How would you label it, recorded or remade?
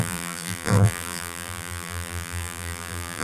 remade